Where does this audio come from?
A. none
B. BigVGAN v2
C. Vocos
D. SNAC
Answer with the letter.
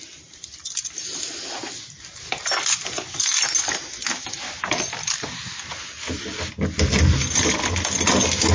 A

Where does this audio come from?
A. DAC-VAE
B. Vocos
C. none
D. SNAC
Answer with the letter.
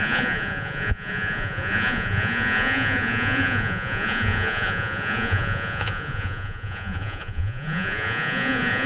B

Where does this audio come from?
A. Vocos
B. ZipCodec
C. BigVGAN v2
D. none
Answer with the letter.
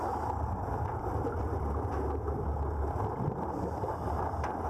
D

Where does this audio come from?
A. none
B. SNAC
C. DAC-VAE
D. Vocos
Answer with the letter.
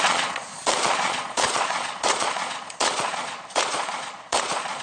D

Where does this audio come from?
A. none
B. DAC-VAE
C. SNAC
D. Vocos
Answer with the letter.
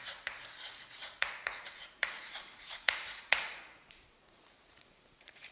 D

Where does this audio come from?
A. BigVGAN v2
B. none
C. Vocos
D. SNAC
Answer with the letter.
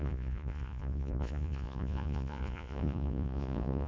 C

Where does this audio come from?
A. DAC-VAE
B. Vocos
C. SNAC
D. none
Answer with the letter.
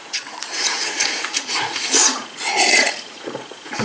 B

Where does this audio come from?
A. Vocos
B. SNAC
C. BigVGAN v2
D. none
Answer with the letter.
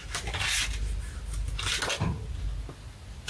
D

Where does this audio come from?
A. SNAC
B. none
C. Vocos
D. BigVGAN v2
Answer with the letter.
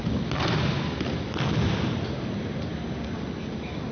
B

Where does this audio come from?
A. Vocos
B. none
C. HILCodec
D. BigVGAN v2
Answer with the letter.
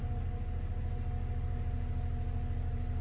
B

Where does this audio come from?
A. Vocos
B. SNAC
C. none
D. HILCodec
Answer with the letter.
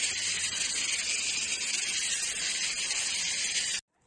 C